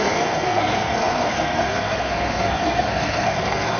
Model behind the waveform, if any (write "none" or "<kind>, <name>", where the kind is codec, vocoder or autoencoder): codec, SNAC